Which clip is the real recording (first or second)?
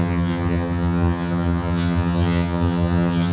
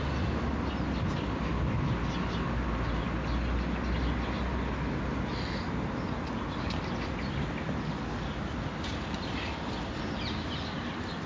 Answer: second